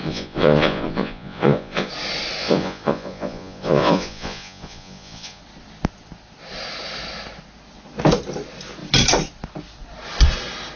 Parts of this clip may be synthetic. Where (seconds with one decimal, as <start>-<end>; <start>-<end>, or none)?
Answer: 0.0-1.9; 2.4-5.4